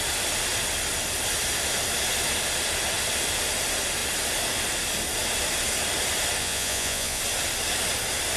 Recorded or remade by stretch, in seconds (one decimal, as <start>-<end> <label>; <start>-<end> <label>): 0.0-6.4 recorded; 6.4-7.2 remade; 7.2-8.4 recorded